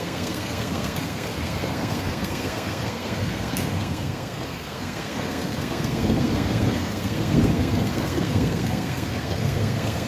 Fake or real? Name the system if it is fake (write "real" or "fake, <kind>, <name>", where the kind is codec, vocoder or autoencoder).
fake, codec, SNAC